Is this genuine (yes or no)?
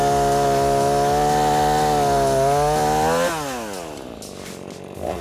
yes